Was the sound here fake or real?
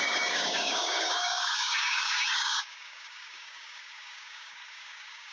fake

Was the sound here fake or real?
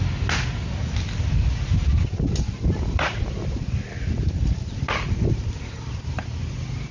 real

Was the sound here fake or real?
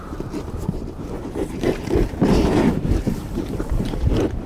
fake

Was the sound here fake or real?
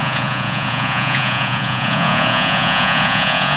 fake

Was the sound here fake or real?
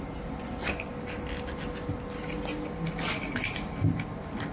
real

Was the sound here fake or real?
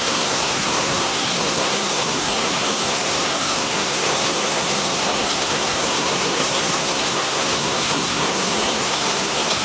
fake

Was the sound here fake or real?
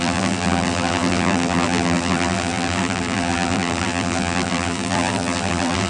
fake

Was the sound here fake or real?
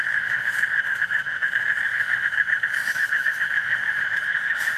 fake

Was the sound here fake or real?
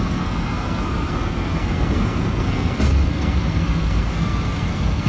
fake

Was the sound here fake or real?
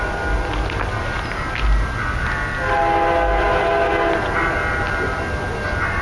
real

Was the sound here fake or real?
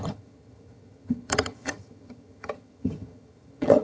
fake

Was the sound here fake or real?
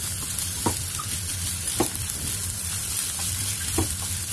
real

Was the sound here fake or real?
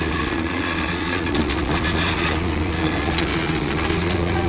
fake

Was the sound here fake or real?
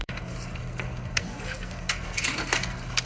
fake